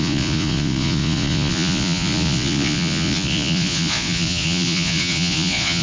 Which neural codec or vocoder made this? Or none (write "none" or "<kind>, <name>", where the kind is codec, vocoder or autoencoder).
vocoder, Vocos